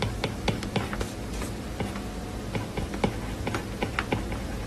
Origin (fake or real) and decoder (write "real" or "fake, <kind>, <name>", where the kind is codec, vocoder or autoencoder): real